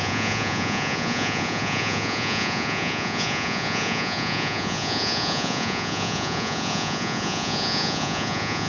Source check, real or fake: fake